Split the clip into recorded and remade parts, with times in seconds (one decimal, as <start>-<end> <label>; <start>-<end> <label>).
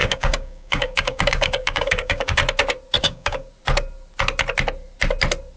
0.0-2.4 remade; 2.4-3.0 recorded; 3.0-3.4 remade; 3.4-5.6 recorded